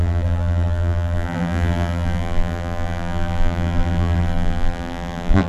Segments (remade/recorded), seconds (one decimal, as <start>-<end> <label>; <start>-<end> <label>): 0.0-5.5 remade